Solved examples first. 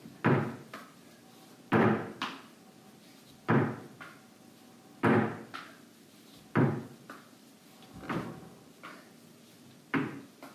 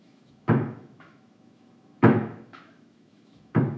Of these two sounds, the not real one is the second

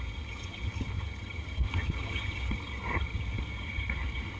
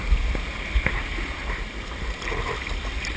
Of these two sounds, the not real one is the first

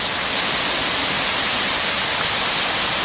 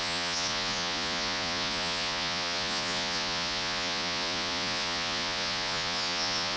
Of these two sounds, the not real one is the second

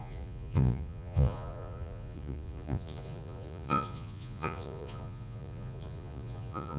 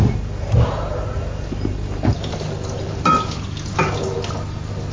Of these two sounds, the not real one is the first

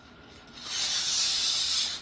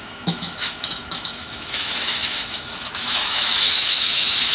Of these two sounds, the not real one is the second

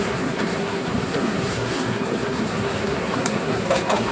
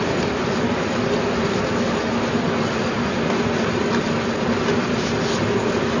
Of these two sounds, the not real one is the first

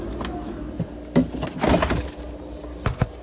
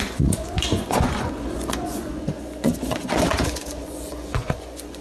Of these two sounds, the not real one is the second